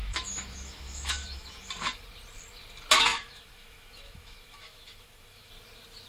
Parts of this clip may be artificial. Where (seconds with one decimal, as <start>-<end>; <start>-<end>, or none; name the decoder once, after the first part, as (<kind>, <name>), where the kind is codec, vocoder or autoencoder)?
0.0-1.7 (autoencoder, DAC-VAE); 3.1-5.5